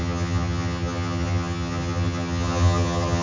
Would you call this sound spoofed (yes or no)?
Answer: yes